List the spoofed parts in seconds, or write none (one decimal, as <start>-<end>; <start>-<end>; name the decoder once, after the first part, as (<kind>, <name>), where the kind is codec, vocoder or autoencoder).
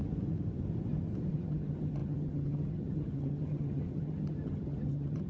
1.3-5.3 (vocoder, HiFi-GAN)